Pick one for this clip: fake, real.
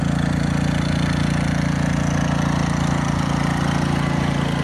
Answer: real